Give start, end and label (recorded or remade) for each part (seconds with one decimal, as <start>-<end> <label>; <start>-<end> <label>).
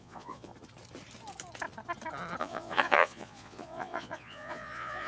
0.0-0.5 remade; 0.5-2.4 recorded; 2.4-5.1 remade